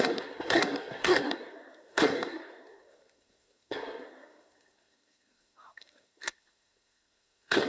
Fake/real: fake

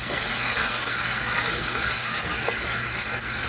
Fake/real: fake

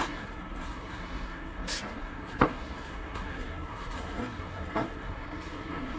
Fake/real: fake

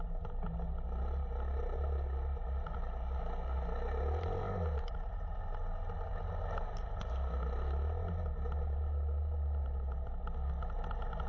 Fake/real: real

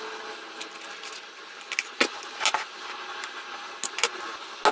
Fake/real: real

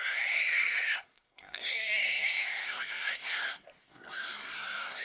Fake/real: fake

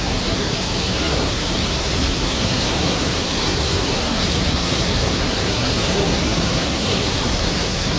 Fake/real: fake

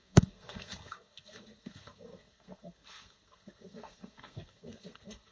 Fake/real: fake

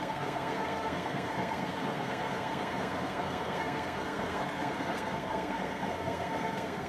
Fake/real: fake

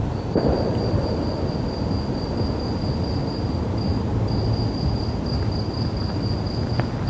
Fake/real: real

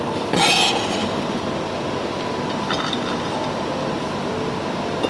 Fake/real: real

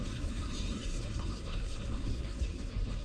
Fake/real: fake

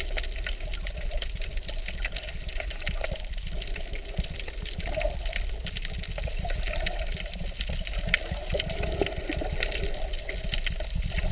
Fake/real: real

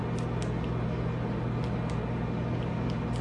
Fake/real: real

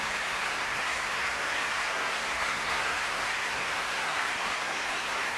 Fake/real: fake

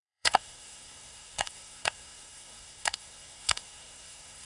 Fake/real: fake